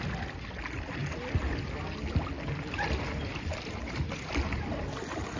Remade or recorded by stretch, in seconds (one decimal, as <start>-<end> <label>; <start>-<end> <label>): 0.0-5.4 recorded